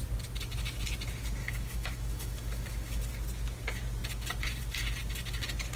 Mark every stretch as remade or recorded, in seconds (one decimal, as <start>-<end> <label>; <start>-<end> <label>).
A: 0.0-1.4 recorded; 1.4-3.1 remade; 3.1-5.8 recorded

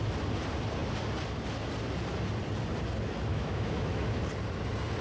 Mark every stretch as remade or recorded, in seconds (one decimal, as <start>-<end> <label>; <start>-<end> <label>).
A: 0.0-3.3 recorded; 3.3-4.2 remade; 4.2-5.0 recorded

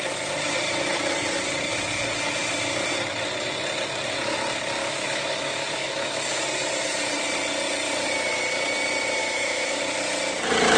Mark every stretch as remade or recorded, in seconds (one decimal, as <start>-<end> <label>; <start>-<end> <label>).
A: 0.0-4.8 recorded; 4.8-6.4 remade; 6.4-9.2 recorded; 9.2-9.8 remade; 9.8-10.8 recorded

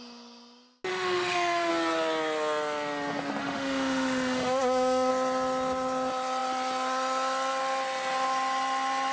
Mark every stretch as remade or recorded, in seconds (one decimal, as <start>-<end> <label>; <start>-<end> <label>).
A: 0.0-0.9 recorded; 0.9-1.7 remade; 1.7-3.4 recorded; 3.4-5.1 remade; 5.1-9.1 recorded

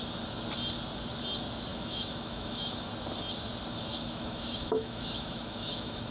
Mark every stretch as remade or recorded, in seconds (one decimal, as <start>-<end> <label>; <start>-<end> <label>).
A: 0.0-1.7 recorded; 1.7-2.9 remade; 2.9-3.9 recorded; 3.9-6.1 remade